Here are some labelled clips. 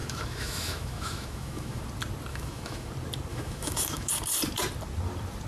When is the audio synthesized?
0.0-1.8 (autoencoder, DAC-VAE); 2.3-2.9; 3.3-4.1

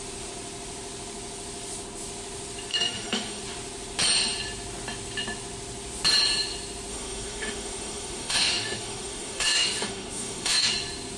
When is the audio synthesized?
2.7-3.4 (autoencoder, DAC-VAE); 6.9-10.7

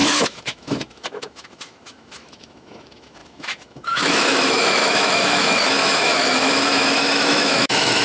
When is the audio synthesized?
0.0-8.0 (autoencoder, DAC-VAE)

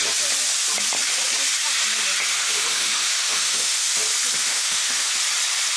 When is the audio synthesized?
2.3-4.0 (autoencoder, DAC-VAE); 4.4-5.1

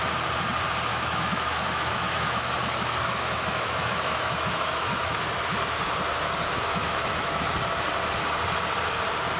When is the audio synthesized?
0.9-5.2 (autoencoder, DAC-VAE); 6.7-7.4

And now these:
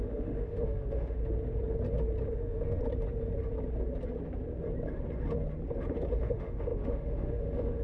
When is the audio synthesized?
0.0-1.2 (autoencoder, DAC-VAE); 2.3-2.8; 6.1-7.8